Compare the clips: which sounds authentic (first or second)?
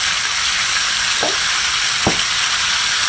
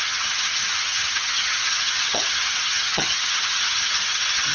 first